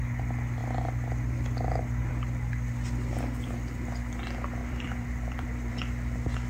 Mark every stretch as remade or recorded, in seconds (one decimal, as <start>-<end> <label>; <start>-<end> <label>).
0.0-4.6 recorded; 4.6-5.7 remade; 5.7-6.5 recorded